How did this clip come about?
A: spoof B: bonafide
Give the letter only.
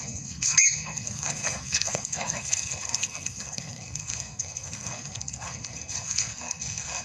A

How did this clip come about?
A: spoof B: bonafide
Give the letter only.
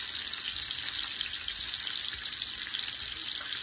B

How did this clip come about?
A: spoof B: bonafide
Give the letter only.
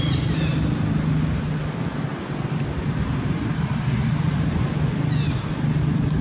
B